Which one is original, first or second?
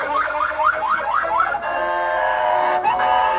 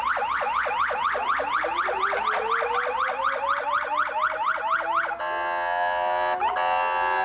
second